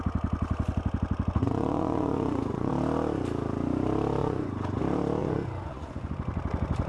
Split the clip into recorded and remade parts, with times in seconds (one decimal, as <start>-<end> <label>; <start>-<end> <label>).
0.0-1.4 recorded; 1.4-2.7 remade; 2.7-4.2 recorded; 4.2-4.8 remade; 4.8-5.2 recorded; 5.2-6.1 remade; 6.1-6.9 recorded